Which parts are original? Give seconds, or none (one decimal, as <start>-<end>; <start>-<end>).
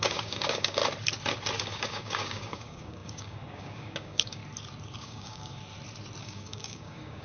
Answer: 0.8-1.6; 4.4-5.0; 5.6-6.2